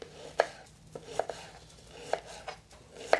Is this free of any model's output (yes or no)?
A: yes